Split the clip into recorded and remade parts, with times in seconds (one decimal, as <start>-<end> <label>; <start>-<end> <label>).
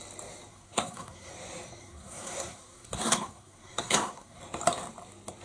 0.0-0.5 recorded; 0.5-1.3 remade; 1.3-1.8 recorded; 1.8-4.4 remade; 4.4-5.4 recorded